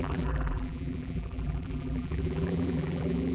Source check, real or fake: fake